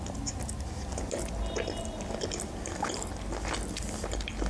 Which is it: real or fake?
real